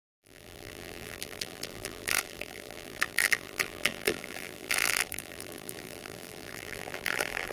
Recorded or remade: remade